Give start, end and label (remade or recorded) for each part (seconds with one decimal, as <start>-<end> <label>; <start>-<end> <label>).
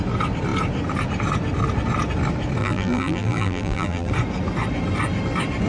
0.0-2.6 recorded; 2.6-4.1 remade; 4.1-5.7 recorded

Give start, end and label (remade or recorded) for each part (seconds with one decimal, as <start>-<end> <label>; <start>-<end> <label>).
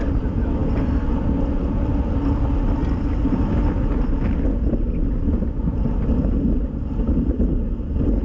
0.0-8.2 recorded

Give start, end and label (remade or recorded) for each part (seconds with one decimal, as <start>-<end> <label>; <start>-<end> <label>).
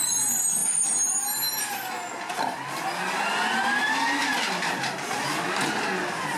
0.0-6.4 recorded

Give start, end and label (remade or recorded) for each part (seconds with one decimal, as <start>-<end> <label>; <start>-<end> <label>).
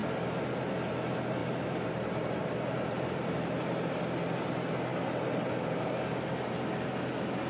0.0-1.4 recorded; 1.4-4.0 remade; 4.0-7.5 recorded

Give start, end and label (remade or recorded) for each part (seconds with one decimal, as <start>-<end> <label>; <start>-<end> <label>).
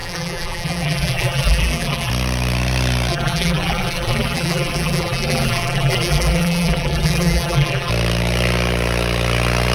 0.0-2.1 remade; 2.1-3.1 recorded; 3.1-7.9 remade; 7.9-9.7 recorded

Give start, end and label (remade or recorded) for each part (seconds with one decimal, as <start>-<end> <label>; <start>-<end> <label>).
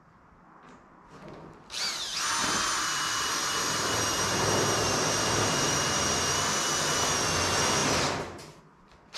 0.0-2.4 recorded; 2.4-6.4 remade; 6.4-9.2 recorded